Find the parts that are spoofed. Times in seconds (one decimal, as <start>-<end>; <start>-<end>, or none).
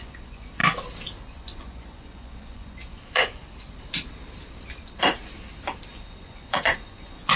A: 0.0-0.6; 1.2-3.4; 5.9-7.4